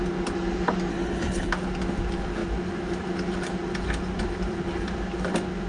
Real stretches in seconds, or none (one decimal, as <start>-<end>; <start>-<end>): 0.0-0.9; 1.5-5.7